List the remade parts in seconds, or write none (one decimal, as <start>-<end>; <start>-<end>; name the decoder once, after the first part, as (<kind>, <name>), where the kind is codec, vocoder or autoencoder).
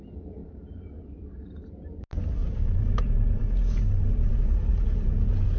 0.4-1.7 (vocoder, BigVGAN v2); 2.4-4.4